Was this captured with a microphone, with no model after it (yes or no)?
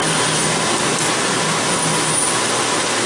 yes